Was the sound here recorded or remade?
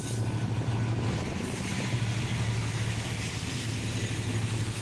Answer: recorded